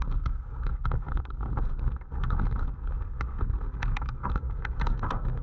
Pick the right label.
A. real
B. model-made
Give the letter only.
B